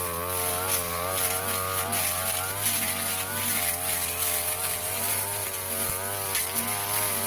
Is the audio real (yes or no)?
yes